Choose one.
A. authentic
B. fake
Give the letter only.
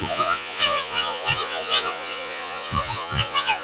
B